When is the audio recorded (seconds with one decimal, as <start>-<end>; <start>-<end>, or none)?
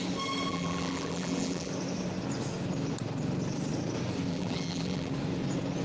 0.0-0.5; 1.7-4.3; 5.1-5.8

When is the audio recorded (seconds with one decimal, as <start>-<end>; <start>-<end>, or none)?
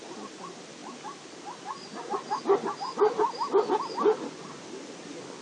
0.0-5.4